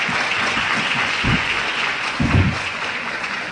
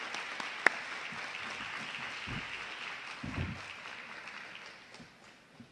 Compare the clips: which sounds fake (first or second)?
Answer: first